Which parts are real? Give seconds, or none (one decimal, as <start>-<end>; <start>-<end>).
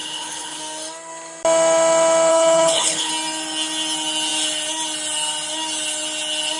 0.6-2.3; 3.1-6.6